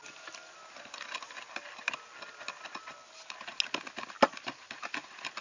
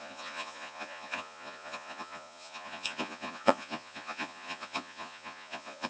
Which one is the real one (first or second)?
first